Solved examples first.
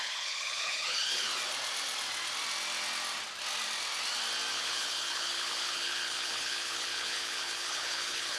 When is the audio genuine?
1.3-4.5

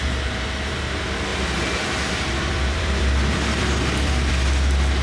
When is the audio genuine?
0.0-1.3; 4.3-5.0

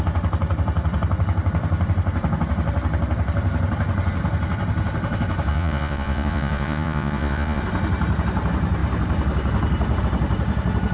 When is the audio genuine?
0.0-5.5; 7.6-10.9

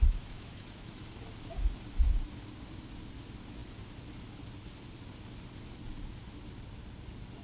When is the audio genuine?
0.9-7.4